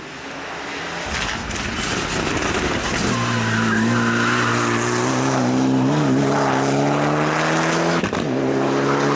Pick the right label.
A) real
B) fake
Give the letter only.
A